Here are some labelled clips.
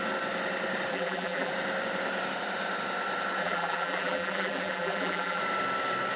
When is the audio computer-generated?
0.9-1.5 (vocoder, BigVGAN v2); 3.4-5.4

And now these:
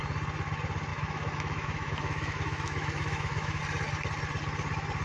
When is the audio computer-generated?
0.9-3.6 (autoencoder, DAC-VAE)

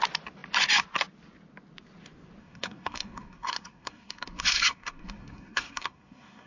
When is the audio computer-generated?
2.4-6.5 (codec, SNAC)

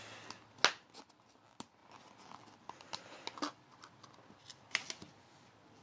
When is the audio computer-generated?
none

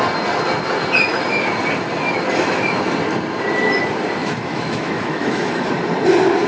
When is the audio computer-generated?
4.2-5.7 (autoencoder, DAC-VAE)